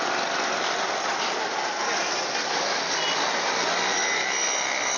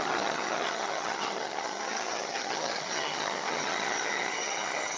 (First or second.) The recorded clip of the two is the first